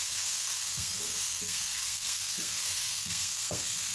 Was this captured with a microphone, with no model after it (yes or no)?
no